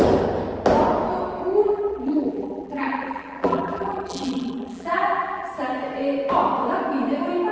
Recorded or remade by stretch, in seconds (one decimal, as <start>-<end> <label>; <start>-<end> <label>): 0.0-1.6 recorded; 1.6-5.5 remade; 5.5-7.5 recorded